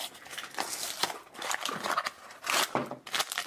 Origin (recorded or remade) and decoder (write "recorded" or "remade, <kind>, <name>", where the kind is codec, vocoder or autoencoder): recorded